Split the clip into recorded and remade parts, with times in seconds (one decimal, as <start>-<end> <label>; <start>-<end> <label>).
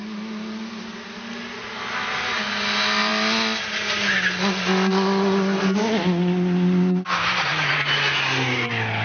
0.0-9.0 recorded